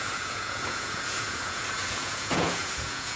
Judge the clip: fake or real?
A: fake